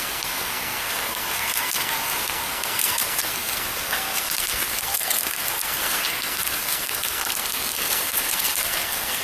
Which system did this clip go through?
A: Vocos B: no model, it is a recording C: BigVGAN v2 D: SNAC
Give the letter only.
D